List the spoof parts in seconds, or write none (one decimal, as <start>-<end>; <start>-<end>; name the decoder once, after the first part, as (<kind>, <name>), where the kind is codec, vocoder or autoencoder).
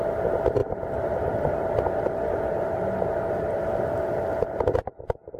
0.6-3.8 (vocoder, BigVGAN v2)